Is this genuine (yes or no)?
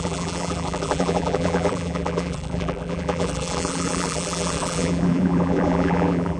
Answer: no